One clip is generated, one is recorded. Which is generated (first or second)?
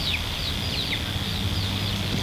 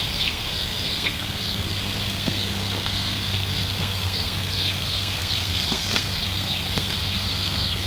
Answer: second